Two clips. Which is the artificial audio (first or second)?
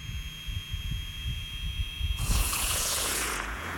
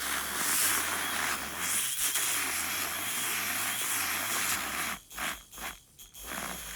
first